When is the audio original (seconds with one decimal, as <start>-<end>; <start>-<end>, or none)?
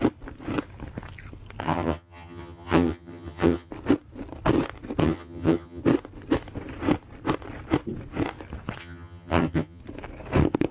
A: 0.0-1.6; 3.7-5.0; 5.8-8.8; 9.8-10.7